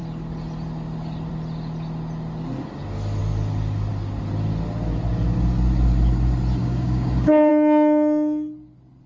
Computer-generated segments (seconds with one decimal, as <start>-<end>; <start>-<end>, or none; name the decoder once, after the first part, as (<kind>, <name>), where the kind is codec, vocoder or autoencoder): 6.6-7.5 (codec, DAC)